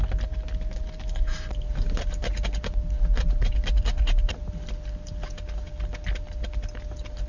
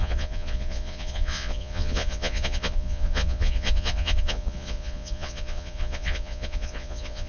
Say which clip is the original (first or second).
first